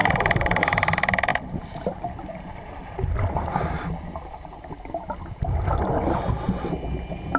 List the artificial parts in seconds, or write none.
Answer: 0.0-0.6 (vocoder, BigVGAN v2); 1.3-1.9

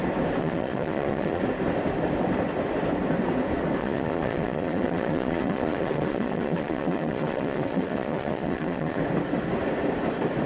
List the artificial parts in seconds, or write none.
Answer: 0.4-1.4 (vocoder, Vocos); 3.8-9.0

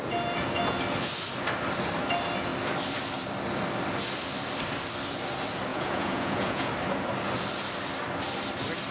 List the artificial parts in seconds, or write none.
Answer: 5.7-6.7 (vocoder, Vocos)